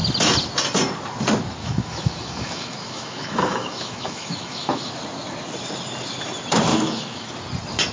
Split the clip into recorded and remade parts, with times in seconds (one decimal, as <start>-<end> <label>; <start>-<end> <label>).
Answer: 0.0-1.6 recorded; 1.6-4.9 remade; 4.9-6.7 recorded; 6.7-7.3 remade; 7.3-7.9 recorded